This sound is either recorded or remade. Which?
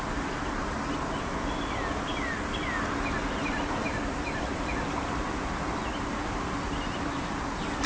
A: recorded